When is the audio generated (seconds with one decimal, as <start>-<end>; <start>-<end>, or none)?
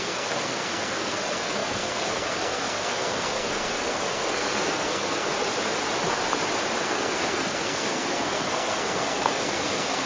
0.0-5.3; 6.8-10.1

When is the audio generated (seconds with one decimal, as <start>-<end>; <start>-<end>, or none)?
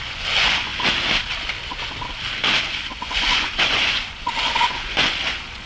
0.0-0.7; 2.7-5.7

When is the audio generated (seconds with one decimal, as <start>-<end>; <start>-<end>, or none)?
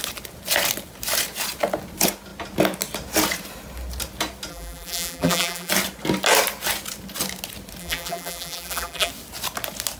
4.5-5.7; 7.8-9.1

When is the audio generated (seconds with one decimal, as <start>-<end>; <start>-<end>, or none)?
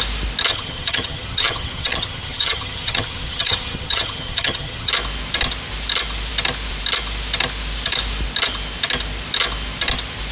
0.5-4.9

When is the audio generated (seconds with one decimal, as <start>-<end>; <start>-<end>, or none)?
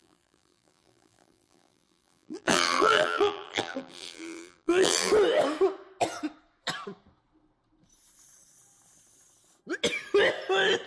0.0-5.1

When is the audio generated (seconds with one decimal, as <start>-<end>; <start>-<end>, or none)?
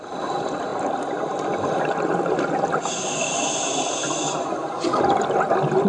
none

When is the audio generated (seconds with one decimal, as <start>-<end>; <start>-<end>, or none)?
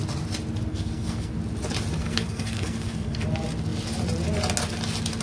0.7-1.3; 2.0-3.2